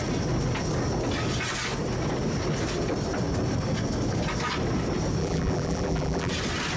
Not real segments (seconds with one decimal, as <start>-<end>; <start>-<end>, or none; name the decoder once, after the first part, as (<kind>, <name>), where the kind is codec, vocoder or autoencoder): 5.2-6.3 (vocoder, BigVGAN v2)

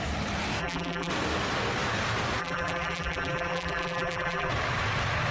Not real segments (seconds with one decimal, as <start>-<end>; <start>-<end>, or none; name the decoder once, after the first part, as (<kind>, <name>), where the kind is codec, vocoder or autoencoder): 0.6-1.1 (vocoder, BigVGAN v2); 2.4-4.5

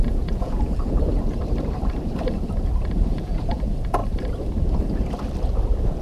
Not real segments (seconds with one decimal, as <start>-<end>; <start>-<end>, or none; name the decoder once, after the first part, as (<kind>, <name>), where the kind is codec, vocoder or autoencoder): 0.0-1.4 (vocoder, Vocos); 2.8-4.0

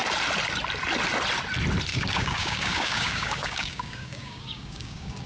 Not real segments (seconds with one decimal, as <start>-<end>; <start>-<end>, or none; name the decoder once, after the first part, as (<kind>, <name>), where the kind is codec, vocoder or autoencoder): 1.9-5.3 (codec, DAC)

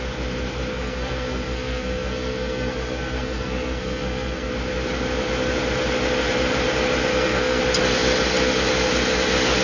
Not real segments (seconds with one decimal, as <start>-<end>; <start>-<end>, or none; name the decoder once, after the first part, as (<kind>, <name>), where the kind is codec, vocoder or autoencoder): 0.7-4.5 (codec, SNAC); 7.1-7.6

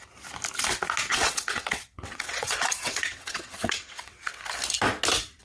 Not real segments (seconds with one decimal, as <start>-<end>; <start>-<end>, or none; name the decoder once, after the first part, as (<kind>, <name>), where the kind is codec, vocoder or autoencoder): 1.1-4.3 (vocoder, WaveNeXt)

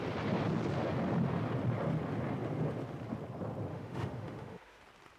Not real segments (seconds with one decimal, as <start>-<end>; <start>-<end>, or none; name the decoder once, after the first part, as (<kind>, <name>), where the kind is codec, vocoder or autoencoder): 3.7-4.8 (autoencoder, DAC-VAE)